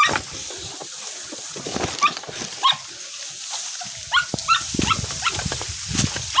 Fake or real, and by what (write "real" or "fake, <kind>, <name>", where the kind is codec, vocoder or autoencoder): real